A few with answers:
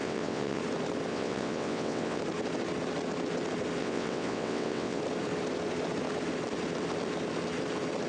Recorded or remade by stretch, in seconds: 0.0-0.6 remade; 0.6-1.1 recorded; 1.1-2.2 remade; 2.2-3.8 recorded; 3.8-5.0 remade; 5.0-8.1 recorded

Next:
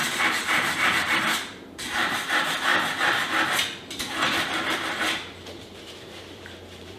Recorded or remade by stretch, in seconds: 0.0-2.7 remade; 2.7-3.9 recorded; 3.9-7.0 remade

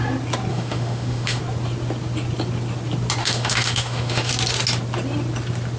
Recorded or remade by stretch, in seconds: 0.0-0.5 recorded; 0.5-1.4 remade; 1.4-3.2 recorded; 3.2-4.3 remade; 4.3-5.8 recorded

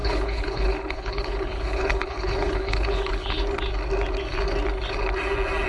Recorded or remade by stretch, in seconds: 0.0-3.4 remade; 3.4-5.7 recorded

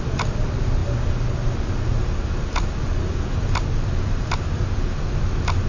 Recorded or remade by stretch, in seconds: 0.0-5.7 recorded

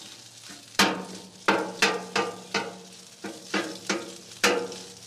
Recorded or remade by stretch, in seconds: 0.0-5.1 recorded

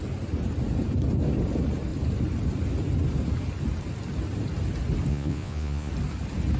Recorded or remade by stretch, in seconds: 0.0-5.1 recorded; 5.1-5.9 remade; 5.9-6.6 recorded

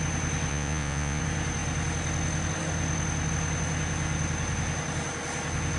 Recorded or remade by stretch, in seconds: 0.0-0.5 recorded; 0.5-1.2 remade; 1.2-5.8 recorded